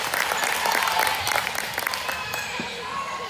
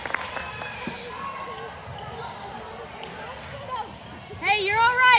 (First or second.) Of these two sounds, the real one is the second